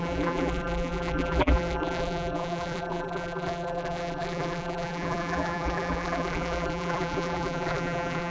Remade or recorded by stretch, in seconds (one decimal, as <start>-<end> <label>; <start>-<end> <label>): 0.0-8.3 remade